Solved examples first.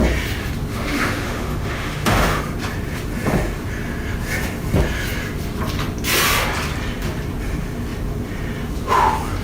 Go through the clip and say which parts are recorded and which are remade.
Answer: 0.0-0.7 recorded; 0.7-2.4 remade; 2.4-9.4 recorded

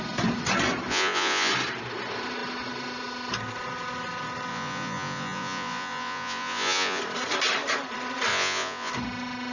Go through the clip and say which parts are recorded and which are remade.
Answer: 0.0-0.9 recorded; 0.9-1.5 remade; 1.5-4.5 recorded; 4.5-7.0 remade; 7.0-8.3 recorded; 8.3-8.9 remade; 8.9-9.5 recorded

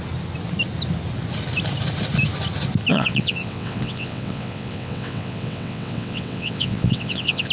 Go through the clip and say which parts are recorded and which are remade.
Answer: 0.0-2.9 recorded; 2.9-7.5 remade

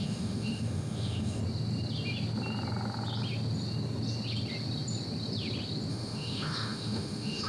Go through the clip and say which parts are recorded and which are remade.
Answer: 0.0-1.4 remade; 1.4-5.9 recorded; 5.9-7.5 remade

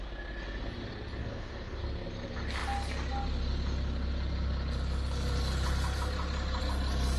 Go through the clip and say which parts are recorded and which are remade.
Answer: 0.0-1.2 recorded; 1.2-1.8 remade; 1.8-7.2 recorded